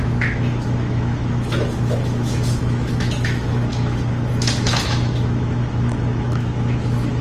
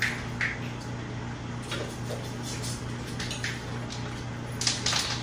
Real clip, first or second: second